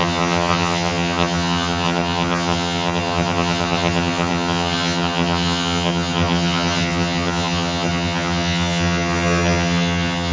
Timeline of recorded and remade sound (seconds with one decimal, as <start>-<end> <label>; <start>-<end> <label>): 0.0-10.3 remade